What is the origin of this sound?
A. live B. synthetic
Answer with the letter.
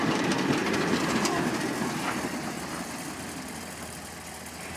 A